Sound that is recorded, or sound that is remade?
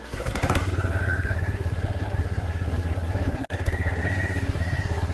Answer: remade